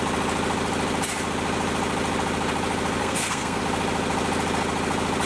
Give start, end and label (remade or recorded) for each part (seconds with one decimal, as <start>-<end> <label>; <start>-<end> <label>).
0.0-3.0 recorded; 3.0-3.6 remade; 3.6-5.3 recorded